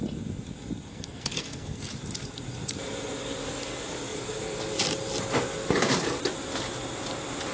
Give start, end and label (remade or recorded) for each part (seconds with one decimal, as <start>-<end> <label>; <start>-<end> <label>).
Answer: 0.0-0.9 recorded; 0.9-1.9 remade; 1.9-7.5 recorded